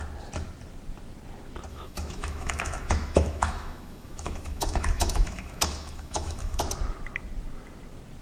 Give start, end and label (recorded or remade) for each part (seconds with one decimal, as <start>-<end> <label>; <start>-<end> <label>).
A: 0.0-1.7 recorded; 1.7-6.6 remade; 6.6-8.2 recorded